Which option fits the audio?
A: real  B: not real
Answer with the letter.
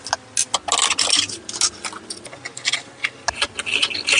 A